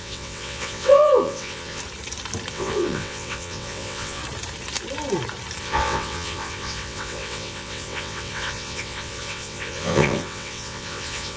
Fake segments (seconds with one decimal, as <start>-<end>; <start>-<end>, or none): 0.0-1.8; 2.5-4.2; 5.6-11.4